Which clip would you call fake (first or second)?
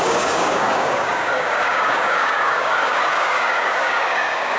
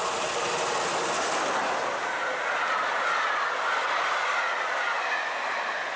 first